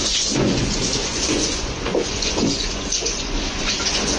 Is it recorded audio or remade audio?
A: remade